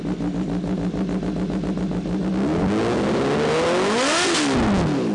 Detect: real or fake real